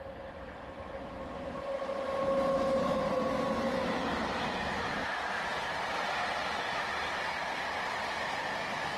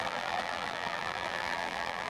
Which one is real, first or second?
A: first